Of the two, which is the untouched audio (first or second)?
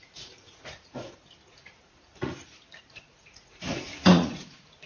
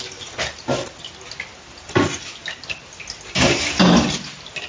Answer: second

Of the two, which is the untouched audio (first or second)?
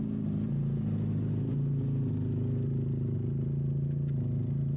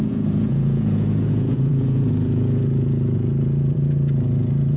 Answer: first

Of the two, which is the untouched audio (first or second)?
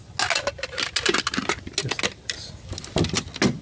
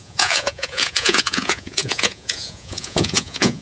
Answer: first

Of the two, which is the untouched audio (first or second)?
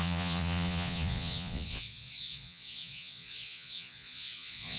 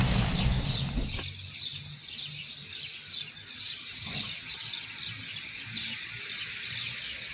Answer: second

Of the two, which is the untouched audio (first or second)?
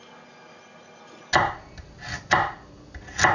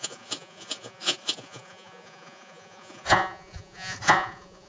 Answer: first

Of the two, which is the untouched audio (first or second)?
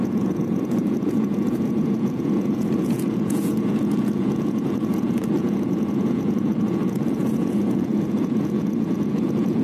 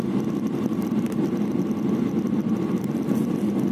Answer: second